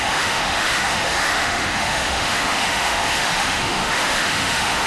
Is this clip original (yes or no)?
no